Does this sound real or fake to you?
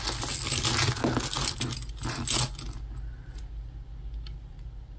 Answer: real